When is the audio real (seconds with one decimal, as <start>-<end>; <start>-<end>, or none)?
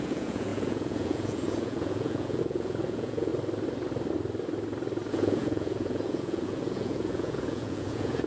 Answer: 3.3-5.1